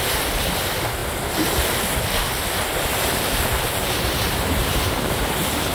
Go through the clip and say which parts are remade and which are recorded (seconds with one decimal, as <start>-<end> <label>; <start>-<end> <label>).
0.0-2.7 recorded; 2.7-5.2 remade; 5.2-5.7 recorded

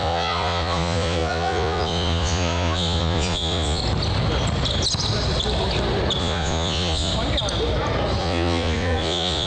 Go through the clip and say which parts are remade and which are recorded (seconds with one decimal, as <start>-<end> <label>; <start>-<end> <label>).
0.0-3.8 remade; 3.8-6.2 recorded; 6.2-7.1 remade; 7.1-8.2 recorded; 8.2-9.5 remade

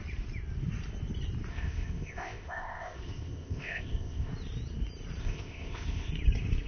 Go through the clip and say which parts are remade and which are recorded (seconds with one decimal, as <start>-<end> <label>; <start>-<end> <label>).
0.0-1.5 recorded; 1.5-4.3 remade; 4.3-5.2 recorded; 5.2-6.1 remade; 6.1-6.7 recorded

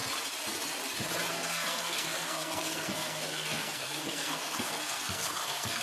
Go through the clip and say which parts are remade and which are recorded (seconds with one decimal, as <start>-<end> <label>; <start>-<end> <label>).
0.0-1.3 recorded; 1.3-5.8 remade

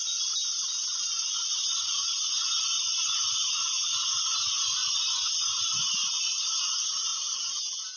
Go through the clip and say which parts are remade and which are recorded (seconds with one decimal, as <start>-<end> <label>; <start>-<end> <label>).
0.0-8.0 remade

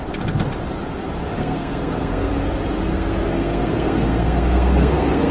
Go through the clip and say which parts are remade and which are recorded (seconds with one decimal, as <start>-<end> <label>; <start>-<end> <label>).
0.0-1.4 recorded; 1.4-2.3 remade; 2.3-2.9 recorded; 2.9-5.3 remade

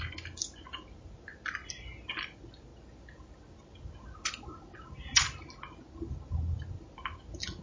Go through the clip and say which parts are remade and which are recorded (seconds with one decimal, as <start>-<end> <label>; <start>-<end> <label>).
0.0-7.6 recorded